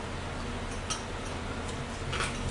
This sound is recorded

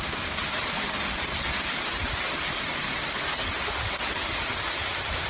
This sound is recorded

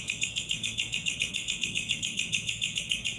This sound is remade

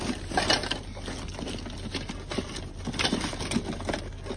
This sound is recorded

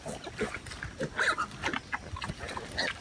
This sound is recorded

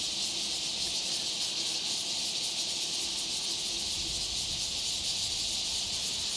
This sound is recorded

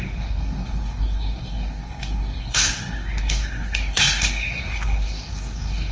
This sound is remade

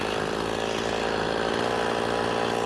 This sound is recorded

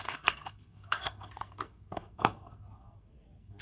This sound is remade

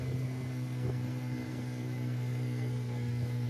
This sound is remade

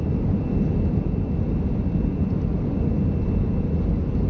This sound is recorded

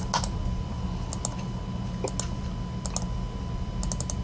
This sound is recorded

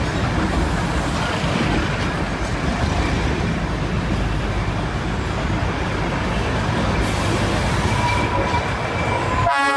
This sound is recorded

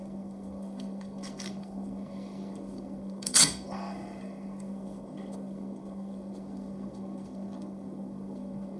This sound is remade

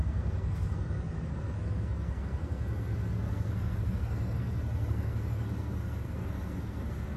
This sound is remade